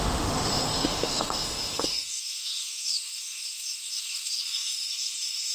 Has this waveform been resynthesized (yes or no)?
yes